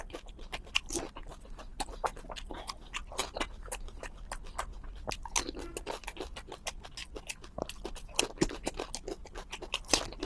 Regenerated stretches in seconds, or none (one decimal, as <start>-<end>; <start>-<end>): none

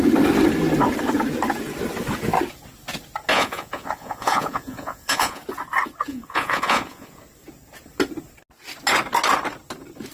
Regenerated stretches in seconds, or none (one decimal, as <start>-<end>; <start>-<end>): 3.3-5.4; 6.1-7.2

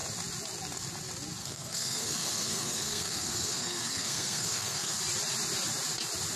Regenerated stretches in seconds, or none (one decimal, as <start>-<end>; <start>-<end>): 1.4-5.0

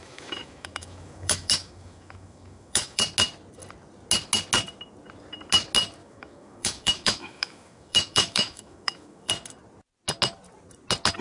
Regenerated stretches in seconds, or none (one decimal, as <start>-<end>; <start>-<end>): 0.0-3.0; 6.0-9.3